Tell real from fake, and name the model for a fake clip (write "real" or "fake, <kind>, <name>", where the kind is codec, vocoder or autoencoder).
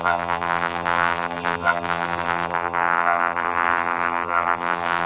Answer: fake, vocoder, BigVGAN v2